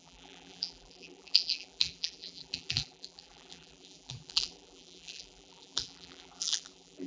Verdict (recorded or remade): remade